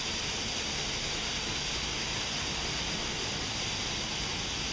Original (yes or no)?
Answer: yes